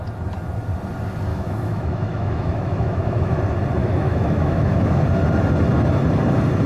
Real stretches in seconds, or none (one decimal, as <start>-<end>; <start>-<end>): 0.0-1.3; 3.4-3.8; 5.0-6.7